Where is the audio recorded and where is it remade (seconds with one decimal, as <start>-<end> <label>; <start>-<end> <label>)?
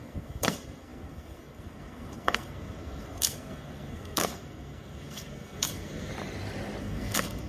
0.0-6.1 remade; 6.1-6.8 recorded; 6.8-7.5 remade